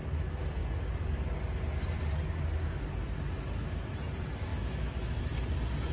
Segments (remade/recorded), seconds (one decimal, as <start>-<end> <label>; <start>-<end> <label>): 0.0-4.5 recorded; 4.5-5.2 remade; 5.2-5.9 recorded